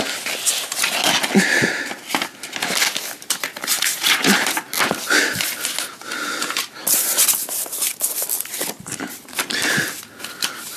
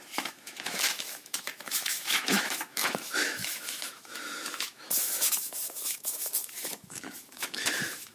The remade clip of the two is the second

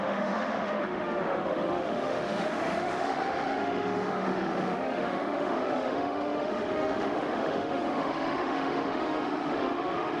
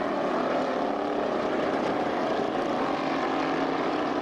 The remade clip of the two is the first